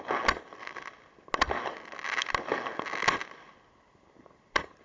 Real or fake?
real